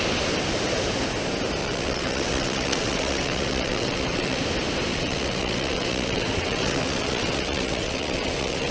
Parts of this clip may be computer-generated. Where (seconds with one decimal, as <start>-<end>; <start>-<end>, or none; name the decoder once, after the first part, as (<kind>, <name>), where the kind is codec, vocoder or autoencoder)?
1.6-4.4 (vocoder, WaveNeXt); 4.9-8.7